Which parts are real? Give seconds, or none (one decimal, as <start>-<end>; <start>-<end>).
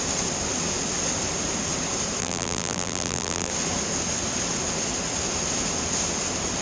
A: 0.0-2.2; 3.5-6.6